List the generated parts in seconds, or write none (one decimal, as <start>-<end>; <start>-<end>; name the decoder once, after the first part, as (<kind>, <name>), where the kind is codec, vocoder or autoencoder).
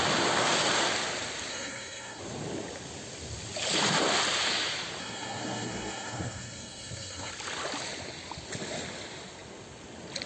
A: 1.5-2.2 (codec, SNAC); 5.0-7.3